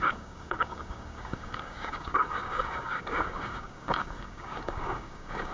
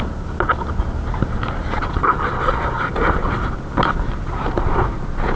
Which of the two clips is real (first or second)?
second